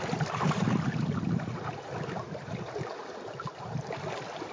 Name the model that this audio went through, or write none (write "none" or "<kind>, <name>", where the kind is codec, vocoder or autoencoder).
none